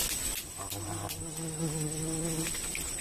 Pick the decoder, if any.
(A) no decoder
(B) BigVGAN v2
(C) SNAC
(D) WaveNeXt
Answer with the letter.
A